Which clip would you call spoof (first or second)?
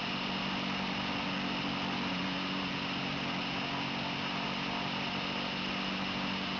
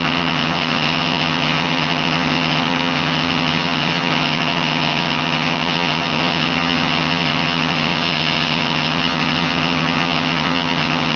second